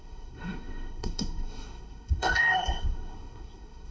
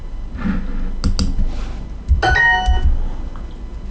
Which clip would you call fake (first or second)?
first